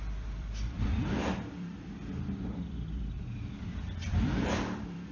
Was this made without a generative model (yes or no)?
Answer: no